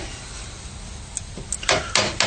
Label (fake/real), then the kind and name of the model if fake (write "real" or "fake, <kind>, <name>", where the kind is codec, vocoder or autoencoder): real